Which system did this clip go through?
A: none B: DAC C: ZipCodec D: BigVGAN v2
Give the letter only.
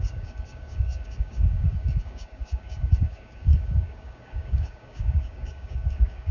B